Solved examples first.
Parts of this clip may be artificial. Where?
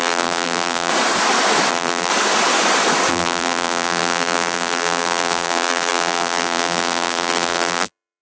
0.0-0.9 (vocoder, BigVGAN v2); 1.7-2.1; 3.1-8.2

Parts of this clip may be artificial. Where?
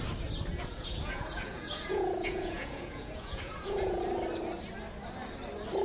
0.5-4.0 (vocoder, Vocos)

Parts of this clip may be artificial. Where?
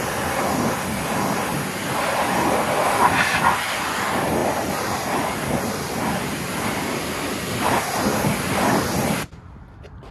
4.4-5.9 (vocoder, BigVGAN v2)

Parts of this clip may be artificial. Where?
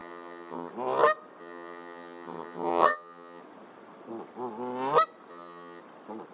0.0-0.7 (vocoder, HiFi-GAN); 1.4-3.4; 5.3-5.8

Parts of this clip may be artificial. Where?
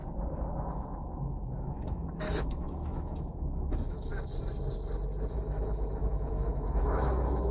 1.2-4.1 (autoencoder, DAC-VAE); 5.3-7.5